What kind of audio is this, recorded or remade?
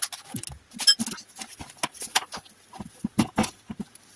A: recorded